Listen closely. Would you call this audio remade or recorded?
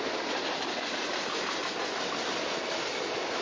recorded